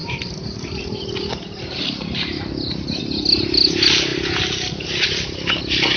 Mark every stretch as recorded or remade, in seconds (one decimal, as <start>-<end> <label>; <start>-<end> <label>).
0.0-6.0 recorded